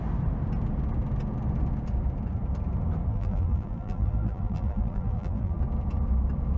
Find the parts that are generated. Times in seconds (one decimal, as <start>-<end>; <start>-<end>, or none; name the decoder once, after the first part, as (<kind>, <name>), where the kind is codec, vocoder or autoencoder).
3.1-5.6 (vocoder, BigVGAN v2)